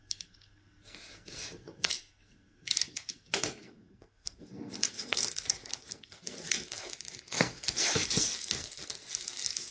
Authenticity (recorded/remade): remade